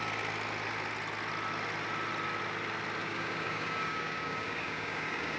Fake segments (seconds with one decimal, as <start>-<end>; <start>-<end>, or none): 3.0-5.4